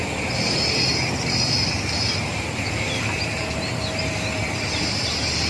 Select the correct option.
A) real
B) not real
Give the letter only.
B